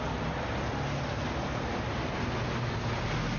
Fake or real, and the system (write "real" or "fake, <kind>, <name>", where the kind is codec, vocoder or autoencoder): real